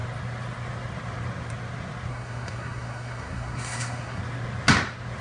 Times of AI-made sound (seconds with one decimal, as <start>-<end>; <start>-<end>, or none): 2.1-4.2